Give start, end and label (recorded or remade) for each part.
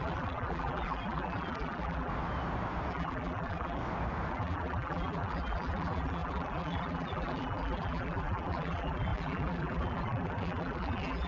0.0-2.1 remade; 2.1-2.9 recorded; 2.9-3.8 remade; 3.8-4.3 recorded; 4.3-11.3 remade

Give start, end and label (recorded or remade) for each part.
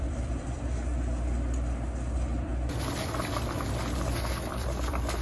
0.0-2.5 remade; 2.5-4.4 recorded; 4.4-5.2 remade